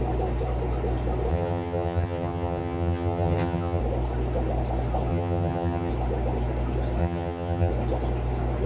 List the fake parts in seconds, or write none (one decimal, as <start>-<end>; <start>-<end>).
1.3-3.8; 5.1-5.9; 7.0-7.7